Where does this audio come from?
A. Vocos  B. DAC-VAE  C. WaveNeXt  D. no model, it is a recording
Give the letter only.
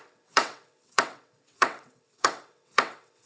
C